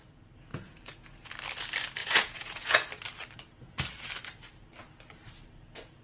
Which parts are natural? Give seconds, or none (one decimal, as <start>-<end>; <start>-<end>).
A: 0.0-0.5; 1.3-2.0; 2.9-6.0